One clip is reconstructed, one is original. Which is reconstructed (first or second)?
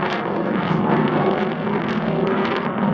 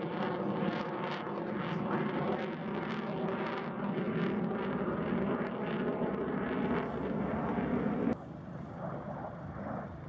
first